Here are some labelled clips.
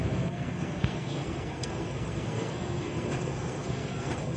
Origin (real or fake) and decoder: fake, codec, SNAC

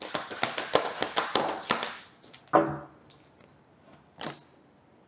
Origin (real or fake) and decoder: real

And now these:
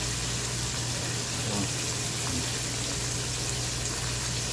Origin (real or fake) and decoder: real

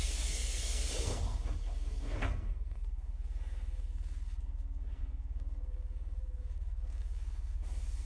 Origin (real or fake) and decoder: fake, codec, SNAC